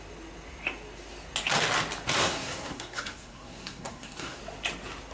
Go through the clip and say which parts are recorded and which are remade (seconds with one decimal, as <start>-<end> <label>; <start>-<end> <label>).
0.0-2.2 recorded; 2.2-4.4 remade; 4.4-5.1 recorded